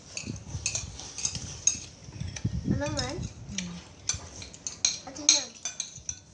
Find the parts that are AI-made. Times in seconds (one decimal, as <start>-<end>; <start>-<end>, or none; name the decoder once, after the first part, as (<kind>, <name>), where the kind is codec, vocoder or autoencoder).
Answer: none